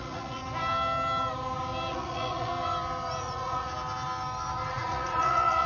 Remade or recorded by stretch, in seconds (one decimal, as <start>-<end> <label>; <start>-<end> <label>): 0.0-0.4 remade; 0.4-1.9 recorded; 1.9-2.5 remade; 2.5-3.2 recorded; 3.2-3.7 remade; 3.7-4.7 recorded; 4.7-5.7 remade